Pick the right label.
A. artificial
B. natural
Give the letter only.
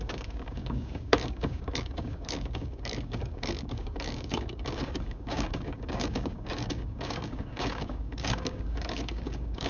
A